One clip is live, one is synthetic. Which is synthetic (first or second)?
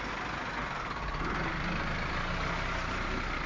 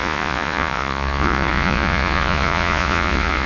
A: second